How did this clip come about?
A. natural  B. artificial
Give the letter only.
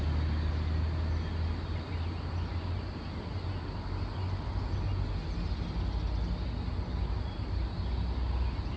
A